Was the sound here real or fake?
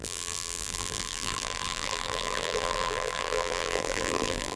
fake